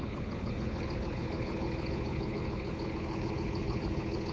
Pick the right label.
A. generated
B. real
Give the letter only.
A